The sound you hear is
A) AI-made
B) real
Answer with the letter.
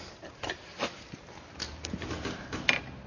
B